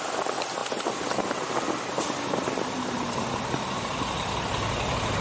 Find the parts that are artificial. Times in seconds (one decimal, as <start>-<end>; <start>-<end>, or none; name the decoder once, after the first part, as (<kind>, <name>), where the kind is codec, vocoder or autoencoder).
none

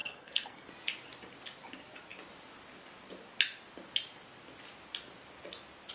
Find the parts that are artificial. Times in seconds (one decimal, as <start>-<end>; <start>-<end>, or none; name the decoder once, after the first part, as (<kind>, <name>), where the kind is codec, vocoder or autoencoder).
0.0-0.7 (codec, SNAC)

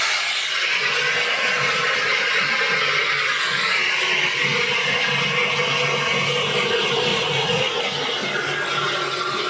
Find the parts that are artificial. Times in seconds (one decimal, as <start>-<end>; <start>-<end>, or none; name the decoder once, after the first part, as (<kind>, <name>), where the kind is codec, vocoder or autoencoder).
7.1-7.8 (vocoder, Vocos)

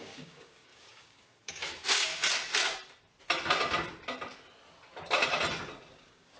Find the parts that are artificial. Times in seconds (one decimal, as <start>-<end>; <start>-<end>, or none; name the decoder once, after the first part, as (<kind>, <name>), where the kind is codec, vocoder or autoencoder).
0.0-2.1 (codec, DAC); 5.9-6.4

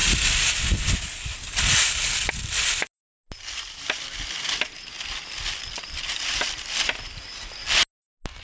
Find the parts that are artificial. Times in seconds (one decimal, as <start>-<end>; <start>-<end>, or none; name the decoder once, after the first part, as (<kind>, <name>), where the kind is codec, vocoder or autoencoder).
none

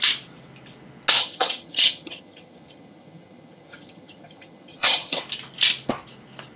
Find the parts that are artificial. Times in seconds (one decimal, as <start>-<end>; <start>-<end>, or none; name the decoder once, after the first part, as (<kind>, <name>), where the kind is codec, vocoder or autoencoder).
1.2-5.2 (vocoder, HiFi-GAN)